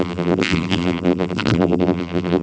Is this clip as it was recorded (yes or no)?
no